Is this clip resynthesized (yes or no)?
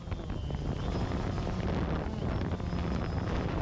no